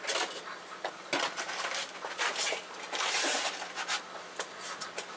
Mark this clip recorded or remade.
recorded